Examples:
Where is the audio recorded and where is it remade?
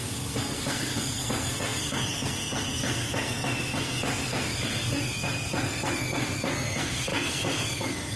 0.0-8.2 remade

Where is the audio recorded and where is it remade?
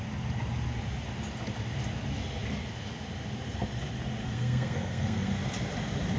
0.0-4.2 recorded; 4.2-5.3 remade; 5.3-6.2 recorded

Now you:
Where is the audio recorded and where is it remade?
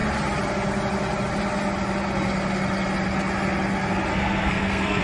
0.0-4.1 recorded; 4.1-5.0 remade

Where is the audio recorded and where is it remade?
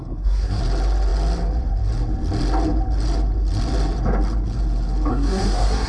0.0-0.6 remade; 0.6-5.1 recorded; 5.1-5.9 remade